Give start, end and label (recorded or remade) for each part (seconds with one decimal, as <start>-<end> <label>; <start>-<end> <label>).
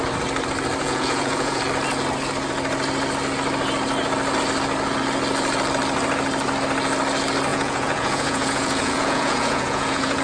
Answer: 0.0-0.8 recorded; 0.8-1.6 remade; 1.6-7.5 recorded; 7.5-10.2 remade